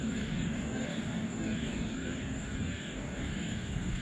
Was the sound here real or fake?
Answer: fake